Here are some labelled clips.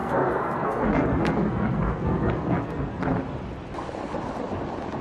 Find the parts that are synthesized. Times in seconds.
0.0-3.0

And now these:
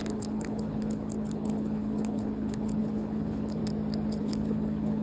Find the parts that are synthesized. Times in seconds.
0.0-3.6; 4.2-5.0

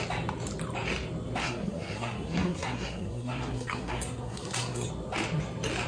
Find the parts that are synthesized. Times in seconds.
1.4-4.9